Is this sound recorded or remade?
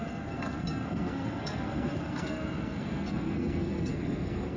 remade